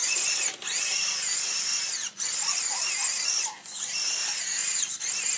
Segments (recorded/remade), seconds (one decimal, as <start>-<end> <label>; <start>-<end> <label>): 0.0-5.4 recorded

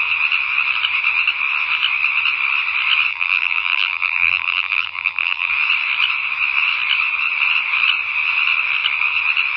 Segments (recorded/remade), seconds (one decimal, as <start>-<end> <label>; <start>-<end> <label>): 0.0-3.1 recorded; 3.1-5.5 remade; 5.5-9.6 recorded

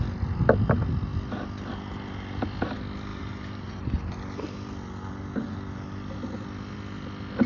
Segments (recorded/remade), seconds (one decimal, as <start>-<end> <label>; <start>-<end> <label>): 0.0-3.1 recorded; 3.1-3.8 remade; 3.8-7.5 recorded

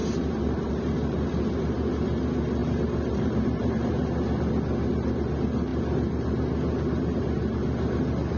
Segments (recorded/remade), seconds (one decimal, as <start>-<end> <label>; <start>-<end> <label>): 0.0-0.7 remade; 0.7-2.6 recorded; 2.6-3.9 remade; 3.9-8.4 recorded

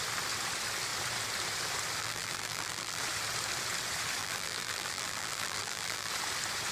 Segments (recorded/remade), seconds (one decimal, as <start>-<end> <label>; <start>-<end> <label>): 0.0-2.0 recorded; 2.0-3.0 remade; 3.0-4.2 recorded; 4.2-6.1 remade; 6.1-6.7 recorded

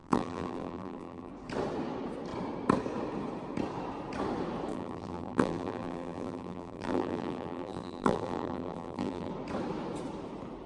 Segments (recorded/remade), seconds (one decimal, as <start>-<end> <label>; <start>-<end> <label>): 0.0-1.3 remade; 1.3-4.7 recorded; 4.7-9.3 remade; 9.3-10.7 recorded

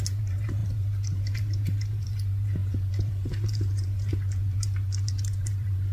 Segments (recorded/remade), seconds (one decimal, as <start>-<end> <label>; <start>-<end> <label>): 0.0-5.9 remade

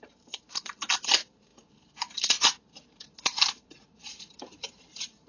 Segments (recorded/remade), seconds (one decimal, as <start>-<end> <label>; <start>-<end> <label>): 0.0-5.3 remade